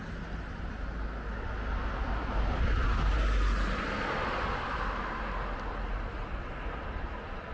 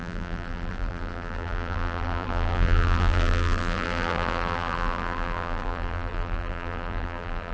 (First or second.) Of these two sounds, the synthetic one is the second